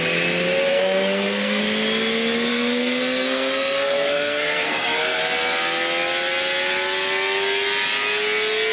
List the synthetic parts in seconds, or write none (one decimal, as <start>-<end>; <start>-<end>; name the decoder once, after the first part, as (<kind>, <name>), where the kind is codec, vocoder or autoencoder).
0.7-1.6 (codec, SNAC); 2.5-5.2